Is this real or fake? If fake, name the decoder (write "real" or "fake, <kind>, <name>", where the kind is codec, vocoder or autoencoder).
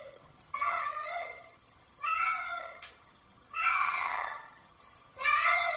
fake, vocoder, HiFi-GAN